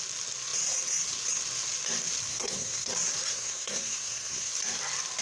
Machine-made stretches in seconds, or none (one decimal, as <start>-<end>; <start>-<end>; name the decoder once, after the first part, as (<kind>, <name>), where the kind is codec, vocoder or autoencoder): 2.3-2.9 (codec, SNAC); 3.3-4.5